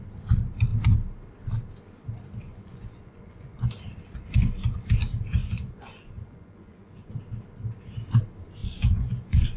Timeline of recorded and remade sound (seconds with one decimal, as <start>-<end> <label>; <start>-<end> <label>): 0.0-2.5 recorded; 2.5-3.7 remade; 3.7-5.4 recorded; 5.4-7.1 remade; 7.1-8.6 recorded; 8.6-9.6 remade